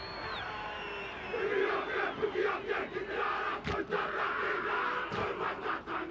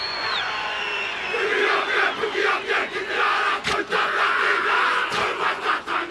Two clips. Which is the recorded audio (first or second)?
first